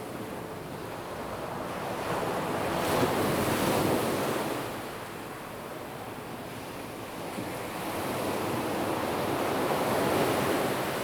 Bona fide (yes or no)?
yes